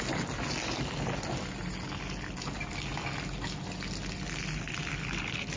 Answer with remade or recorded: recorded